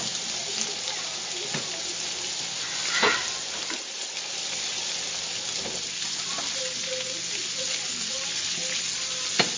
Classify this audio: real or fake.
real